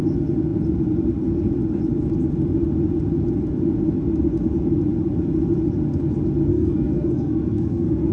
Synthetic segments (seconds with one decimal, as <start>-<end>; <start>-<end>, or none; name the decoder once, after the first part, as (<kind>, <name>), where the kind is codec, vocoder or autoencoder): 6.5-8.1 (codec, SNAC)